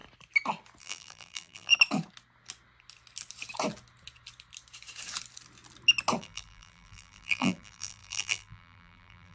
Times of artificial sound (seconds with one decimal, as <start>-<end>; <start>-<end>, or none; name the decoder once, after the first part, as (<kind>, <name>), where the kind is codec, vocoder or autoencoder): 0.8-1.7 (vocoder, BigVGAN v2); 6.2-9.3